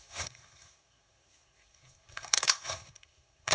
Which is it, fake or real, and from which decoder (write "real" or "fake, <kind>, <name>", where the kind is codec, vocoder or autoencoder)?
fake, codec, SNAC